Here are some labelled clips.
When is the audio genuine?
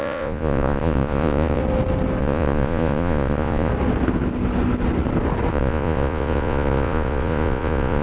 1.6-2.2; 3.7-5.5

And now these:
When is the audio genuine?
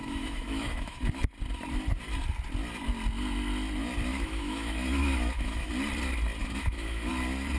1.1-4.1; 5.7-6.4; 7.1-7.6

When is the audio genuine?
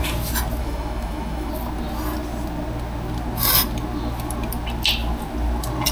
0.0-0.6; 1.5-5.9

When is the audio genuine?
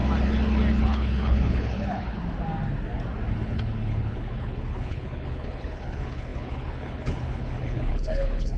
0.0-0.8; 2.2-3.3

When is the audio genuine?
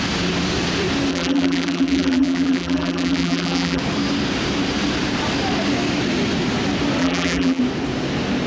0.0-1.1; 3.8-7.0; 7.6-8.5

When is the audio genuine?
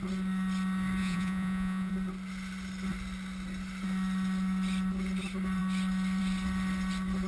0.0-1.0; 1.9-7.3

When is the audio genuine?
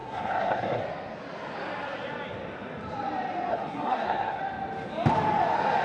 0.8-3.5; 4.4-5.8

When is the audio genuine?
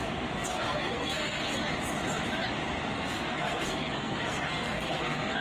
1.5-2.9